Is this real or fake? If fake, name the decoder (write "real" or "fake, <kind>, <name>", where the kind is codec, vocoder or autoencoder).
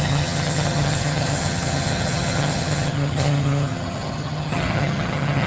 fake, vocoder, HiFi-GAN